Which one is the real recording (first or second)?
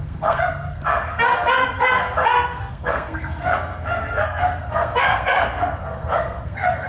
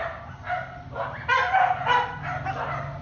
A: second